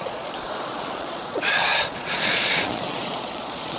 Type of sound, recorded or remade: remade